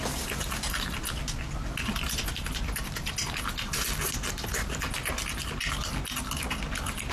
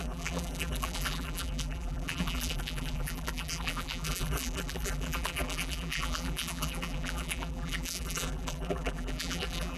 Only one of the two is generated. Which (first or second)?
second